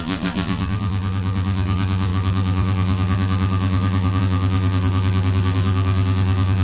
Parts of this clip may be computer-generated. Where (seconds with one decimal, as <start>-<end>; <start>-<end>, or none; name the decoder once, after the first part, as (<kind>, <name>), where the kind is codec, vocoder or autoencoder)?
0.0-6.6 (vocoder, BigVGAN v2)